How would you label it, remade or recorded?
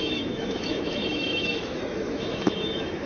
remade